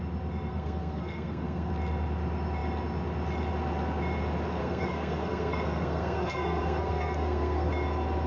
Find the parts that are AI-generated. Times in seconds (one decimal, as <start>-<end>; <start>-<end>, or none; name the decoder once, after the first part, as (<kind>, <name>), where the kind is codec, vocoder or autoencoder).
0.5-1.7 (codec, SNAC); 4.6-7.7